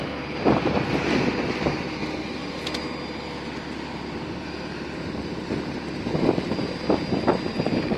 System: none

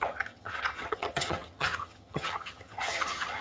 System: vocoder, HiFi-GAN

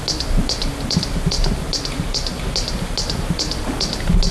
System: none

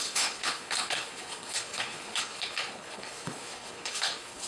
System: codec, HILCodec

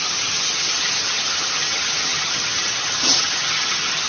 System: vocoder, HiFi-GAN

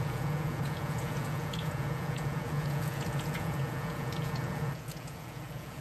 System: vocoder, Vocos